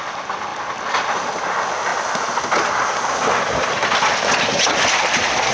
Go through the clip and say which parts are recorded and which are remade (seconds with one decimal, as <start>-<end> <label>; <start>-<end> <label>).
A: 0.0-5.5 recorded